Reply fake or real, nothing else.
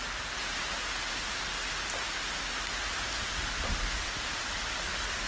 real